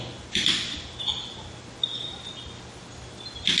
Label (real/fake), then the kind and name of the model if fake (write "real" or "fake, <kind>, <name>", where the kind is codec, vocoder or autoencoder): real